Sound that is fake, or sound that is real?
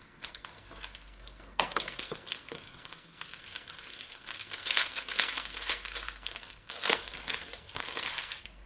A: fake